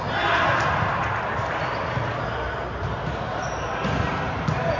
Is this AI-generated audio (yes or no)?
no